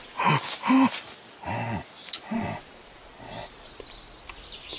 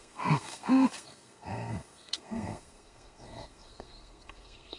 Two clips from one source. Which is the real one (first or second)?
first